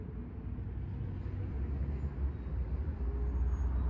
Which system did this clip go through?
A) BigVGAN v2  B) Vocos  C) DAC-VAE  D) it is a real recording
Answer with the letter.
D